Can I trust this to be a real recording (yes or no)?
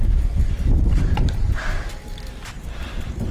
no